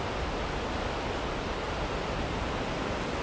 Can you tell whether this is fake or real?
real